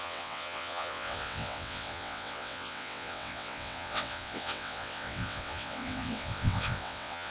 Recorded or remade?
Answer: remade